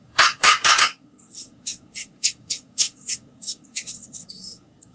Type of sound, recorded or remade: remade